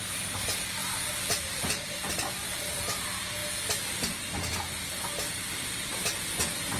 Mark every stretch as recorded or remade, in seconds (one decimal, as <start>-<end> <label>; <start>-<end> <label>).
0.0-0.8 recorded; 0.8-1.7 remade; 1.7-6.8 recorded